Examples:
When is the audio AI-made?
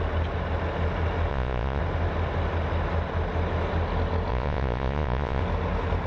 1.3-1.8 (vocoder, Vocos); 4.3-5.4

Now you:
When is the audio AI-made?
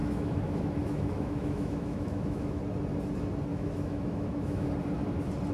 0.0-2.6 (autoencoder, DAC-VAE); 3.5-4.7